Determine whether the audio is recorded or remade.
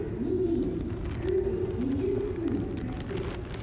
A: recorded